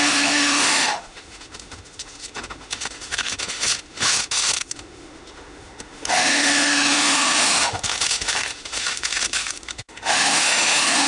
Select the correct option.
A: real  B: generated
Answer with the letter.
B